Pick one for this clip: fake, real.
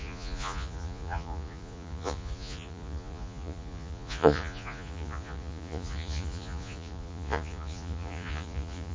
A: fake